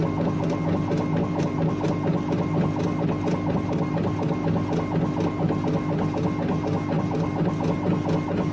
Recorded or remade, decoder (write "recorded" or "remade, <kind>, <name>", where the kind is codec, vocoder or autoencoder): recorded